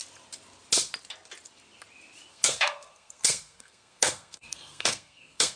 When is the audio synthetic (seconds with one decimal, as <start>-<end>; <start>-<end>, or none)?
2.3-5.6